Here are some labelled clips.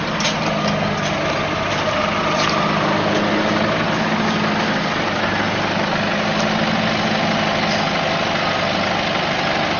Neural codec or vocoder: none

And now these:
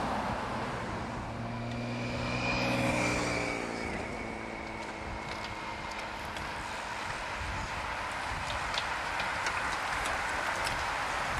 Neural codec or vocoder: none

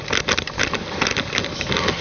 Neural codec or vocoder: none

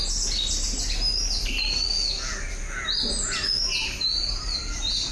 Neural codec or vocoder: none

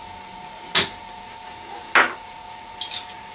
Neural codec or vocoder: none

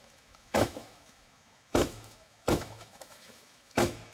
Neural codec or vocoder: autoencoder, DAC-VAE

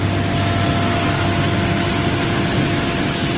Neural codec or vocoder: none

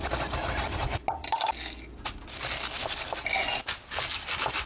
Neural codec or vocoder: none